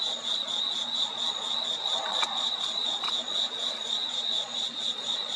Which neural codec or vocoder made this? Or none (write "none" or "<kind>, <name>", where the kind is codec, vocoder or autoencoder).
vocoder, Vocos